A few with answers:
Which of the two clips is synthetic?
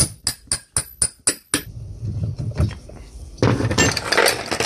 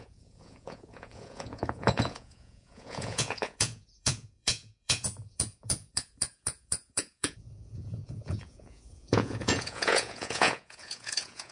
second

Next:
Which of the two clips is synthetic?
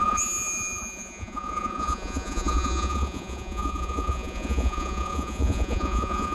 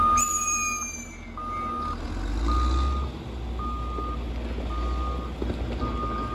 first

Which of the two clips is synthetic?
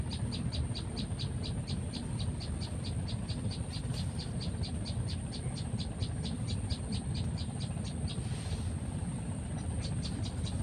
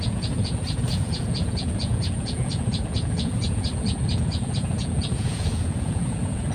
second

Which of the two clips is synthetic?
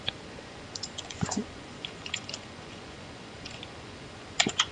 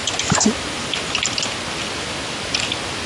first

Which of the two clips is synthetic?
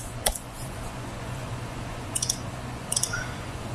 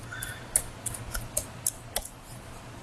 first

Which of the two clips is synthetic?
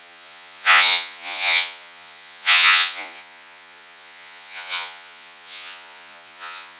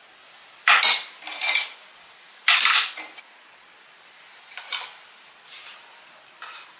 first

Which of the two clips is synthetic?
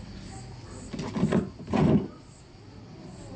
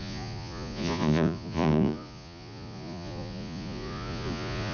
second